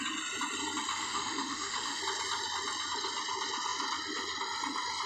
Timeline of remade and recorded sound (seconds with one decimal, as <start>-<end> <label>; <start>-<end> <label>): 0.0-0.9 recorded; 0.9-2.0 remade; 2.0-5.1 recorded